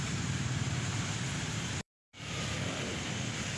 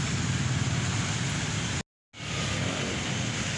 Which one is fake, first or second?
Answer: first